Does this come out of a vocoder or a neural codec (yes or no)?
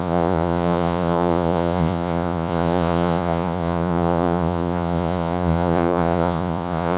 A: yes